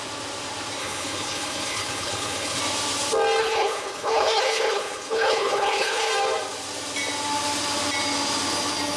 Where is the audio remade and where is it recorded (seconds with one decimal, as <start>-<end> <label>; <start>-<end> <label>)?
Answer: 0.0-0.8 recorded; 0.8-2.6 remade; 2.6-3.4 recorded; 3.4-6.1 remade; 6.1-9.0 recorded